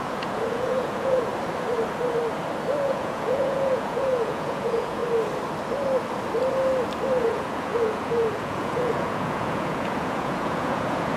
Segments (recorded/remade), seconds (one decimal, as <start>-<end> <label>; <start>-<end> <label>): 0.0-1.3 remade; 1.3-2.8 recorded; 2.8-5.0 remade; 5.0-7.2 recorded; 7.2-11.2 remade